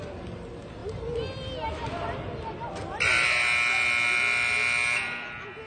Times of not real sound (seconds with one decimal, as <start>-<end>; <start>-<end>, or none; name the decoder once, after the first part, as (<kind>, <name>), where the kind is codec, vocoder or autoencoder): none